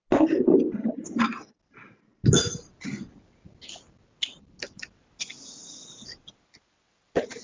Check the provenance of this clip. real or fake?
real